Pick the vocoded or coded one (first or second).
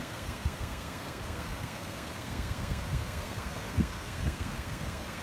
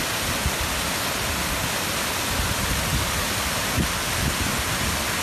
first